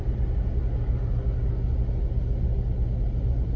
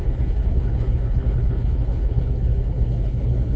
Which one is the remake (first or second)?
second